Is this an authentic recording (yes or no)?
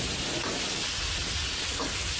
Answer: yes